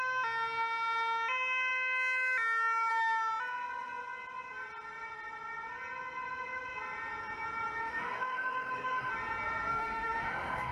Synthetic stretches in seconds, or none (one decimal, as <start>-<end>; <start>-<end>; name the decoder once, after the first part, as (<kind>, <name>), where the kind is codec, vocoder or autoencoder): 7.8-9.1 (autoencoder, DAC-VAE); 9.7-10.7